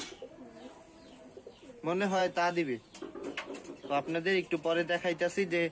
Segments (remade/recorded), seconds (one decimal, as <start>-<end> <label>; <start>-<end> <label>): 0.0-5.7 recorded